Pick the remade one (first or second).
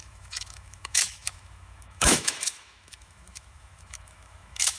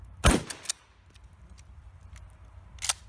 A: first